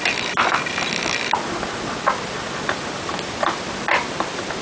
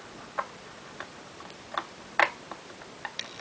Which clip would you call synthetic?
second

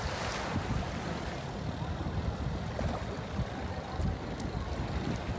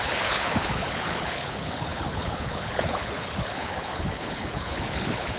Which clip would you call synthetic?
second